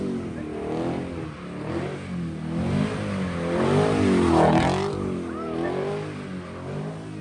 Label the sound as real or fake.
real